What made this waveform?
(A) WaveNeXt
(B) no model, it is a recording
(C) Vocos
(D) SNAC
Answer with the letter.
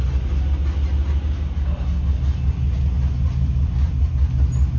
B